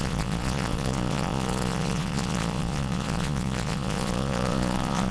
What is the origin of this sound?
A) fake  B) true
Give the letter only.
A